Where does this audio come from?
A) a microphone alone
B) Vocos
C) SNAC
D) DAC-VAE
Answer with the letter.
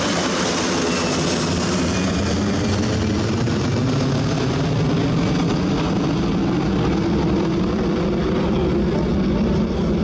A